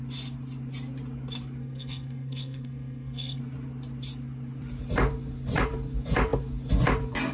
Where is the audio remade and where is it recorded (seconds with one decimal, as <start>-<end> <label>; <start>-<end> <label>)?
0.0-1.6 recorded; 1.6-3.4 remade; 3.4-7.3 recorded